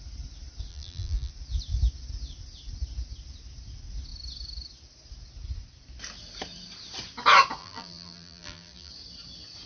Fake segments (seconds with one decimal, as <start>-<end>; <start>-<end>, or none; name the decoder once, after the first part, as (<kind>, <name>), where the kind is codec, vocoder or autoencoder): 0.7-1.3 (vocoder, BigVGAN v2); 7.6-8.9

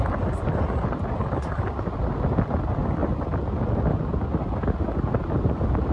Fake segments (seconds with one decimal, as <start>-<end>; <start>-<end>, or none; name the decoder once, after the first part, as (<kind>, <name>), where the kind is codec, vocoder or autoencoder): none

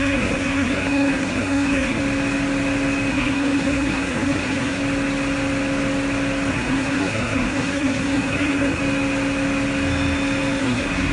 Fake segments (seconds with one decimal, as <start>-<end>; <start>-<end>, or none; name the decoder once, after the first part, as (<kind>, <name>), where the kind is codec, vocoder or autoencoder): 0.0-2.0 (codec, SNAC); 3.1-4.8; 6.5-8.8; 10.6-11.1